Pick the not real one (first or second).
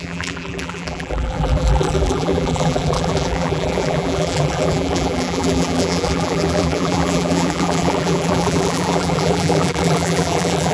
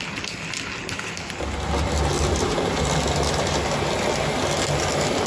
first